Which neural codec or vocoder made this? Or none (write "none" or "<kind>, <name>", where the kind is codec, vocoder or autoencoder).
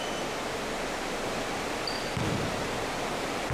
none